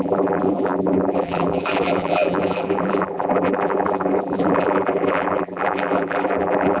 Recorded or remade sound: remade